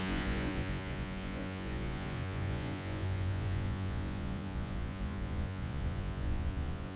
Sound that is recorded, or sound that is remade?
remade